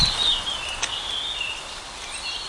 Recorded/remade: remade